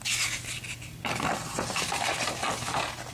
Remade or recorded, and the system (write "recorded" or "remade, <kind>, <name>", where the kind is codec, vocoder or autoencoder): recorded